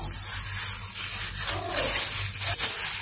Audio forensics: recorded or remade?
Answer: recorded